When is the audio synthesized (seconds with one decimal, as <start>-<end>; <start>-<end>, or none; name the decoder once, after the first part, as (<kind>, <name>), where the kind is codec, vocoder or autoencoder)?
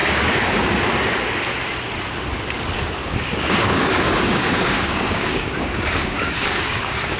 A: 0.0-0.8 (codec, DAC); 3.0-7.2